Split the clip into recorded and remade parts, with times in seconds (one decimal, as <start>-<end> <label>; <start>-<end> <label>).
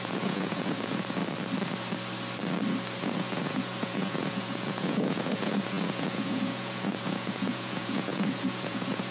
0.0-1.2 remade; 1.2-3.0 recorded; 3.0-9.1 remade